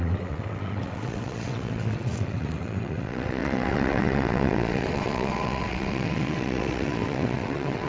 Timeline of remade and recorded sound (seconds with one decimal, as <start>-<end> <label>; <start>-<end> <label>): 0.0-7.9 remade

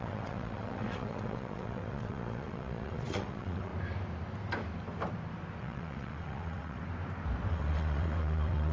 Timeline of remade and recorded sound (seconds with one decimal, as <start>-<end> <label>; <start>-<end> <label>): 0.0-3.7 remade; 3.7-5.6 recorded; 5.6-6.8 remade; 6.8-7.5 recorded; 7.5-8.7 remade

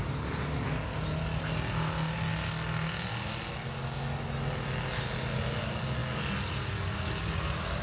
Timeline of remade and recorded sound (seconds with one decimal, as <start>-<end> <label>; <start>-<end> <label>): 0.0-7.8 recorded